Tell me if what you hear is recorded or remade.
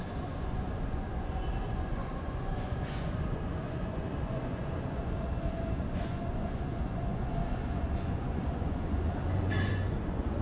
remade